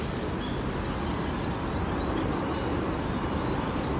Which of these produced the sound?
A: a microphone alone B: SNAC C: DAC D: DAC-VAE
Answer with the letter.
A